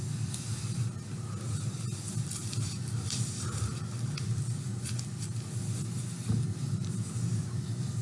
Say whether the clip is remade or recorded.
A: recorded